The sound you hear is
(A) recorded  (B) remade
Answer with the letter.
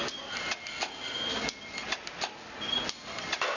A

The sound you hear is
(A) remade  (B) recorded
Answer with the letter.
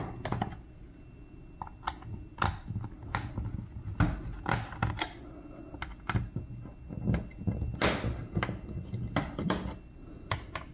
B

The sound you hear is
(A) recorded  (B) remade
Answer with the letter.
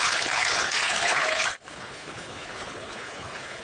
B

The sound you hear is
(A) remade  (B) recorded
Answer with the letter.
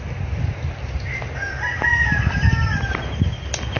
B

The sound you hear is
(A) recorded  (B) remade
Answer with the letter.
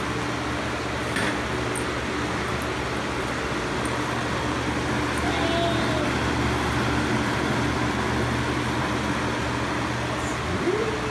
A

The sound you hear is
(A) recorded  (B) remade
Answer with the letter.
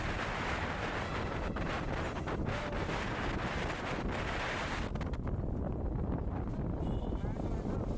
A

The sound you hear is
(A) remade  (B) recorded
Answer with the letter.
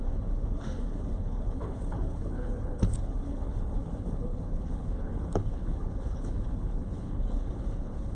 A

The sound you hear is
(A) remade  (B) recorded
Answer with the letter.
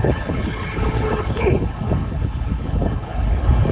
A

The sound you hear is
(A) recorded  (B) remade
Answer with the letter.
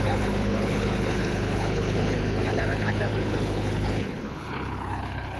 B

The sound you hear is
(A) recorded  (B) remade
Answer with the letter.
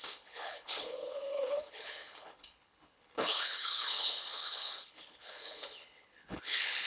B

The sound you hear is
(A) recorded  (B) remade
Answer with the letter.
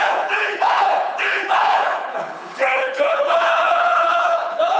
B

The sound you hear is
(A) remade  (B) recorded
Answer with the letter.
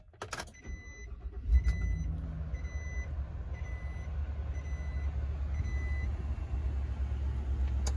B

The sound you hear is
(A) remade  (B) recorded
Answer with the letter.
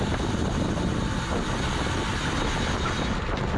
B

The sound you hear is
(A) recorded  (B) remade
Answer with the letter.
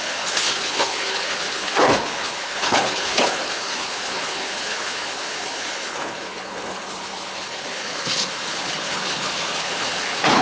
B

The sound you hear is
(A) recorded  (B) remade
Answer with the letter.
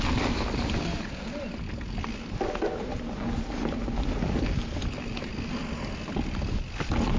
A